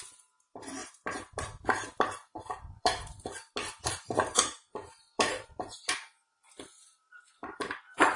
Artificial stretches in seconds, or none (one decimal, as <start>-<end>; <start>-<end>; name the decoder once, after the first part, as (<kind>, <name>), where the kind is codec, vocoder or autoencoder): 0.8-3.3 (vocoder, BigVGAN v2); 3.8-8.2